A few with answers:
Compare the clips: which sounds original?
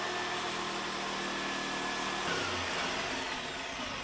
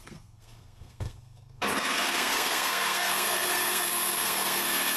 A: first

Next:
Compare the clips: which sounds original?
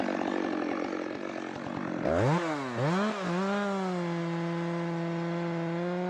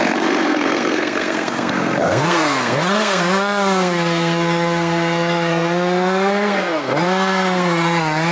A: first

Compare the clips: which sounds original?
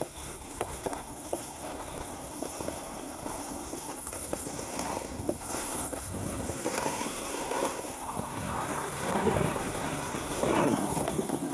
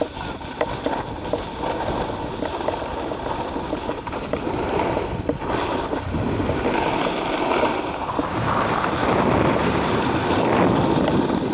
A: second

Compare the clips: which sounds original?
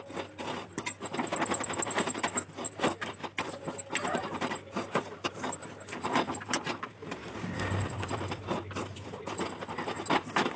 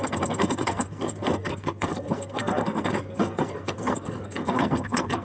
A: first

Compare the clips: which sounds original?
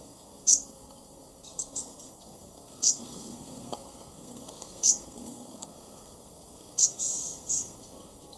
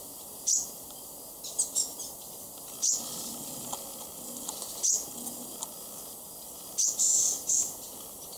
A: second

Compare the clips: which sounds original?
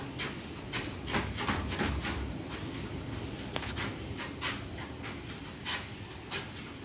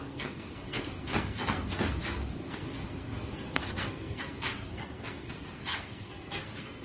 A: first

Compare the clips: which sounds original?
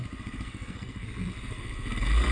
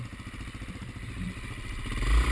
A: second